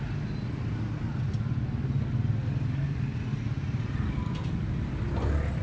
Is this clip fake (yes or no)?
no